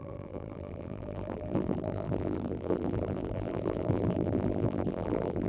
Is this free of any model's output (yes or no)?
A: no